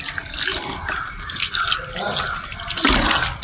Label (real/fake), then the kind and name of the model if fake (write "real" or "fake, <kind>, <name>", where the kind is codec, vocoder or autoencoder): real